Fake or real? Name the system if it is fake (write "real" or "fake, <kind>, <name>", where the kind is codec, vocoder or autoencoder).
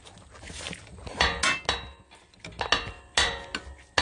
real